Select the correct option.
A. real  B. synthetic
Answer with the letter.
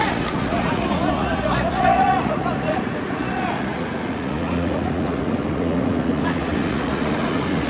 B